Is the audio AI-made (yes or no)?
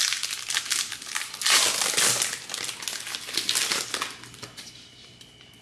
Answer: no